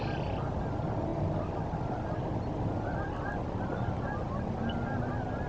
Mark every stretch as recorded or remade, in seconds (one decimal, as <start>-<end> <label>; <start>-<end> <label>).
0.0-5.5 recorded